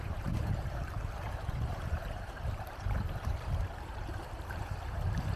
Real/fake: fake